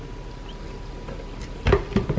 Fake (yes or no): no